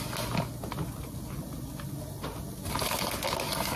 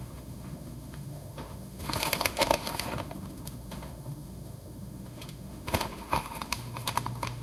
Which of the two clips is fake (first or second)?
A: second